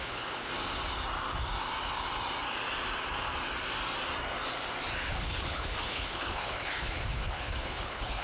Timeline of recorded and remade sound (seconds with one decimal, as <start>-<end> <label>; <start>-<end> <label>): 0.0-0.5 remade; 0.5-5.1 recorded; 5.1-8.2 remade

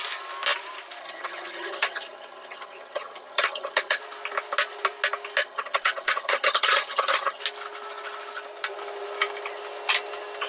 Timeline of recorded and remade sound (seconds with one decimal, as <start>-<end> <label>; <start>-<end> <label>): 0.0-1.0 recorded; 1.0-4.0 remade; 4.0-5.4 recorded; 5.4-7.4 remade; 7.4-10.5 recorded

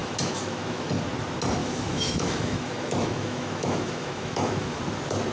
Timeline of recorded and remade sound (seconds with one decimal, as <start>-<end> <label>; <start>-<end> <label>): 0.0-0.9 remade; 0.9-1.6 recorded; 1.6-4.8 remade; 4.8-5.3 recorded

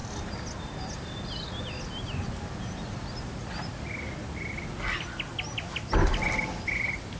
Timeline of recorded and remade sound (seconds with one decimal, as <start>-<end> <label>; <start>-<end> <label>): 0.0-7.2 recorded